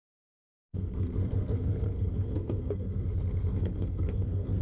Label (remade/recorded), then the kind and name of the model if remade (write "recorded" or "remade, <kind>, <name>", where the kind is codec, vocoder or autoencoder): remade, codec, SNAC